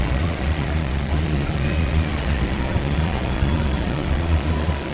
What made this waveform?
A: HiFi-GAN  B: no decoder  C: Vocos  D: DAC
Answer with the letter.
C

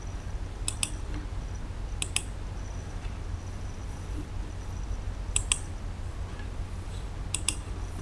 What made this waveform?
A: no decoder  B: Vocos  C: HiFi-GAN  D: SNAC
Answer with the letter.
A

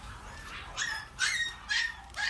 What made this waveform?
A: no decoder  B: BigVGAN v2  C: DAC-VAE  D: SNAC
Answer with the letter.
B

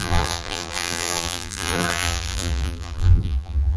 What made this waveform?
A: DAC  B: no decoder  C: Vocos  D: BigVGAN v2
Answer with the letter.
D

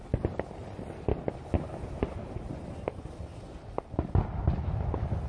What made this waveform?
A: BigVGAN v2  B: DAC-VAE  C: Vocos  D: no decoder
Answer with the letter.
D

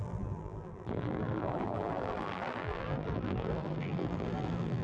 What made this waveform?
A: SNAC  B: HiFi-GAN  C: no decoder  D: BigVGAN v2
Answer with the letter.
D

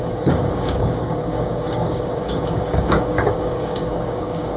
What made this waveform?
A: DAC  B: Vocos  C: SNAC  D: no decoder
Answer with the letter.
A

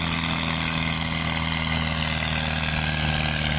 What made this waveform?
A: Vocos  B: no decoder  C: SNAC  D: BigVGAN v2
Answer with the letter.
B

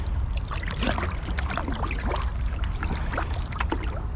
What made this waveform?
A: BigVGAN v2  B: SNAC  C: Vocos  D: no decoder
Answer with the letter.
D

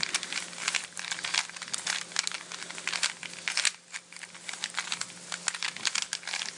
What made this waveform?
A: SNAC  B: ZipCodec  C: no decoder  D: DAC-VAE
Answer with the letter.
C